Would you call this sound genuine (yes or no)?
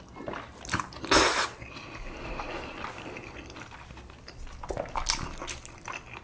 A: yes